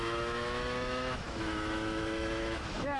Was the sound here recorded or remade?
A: remade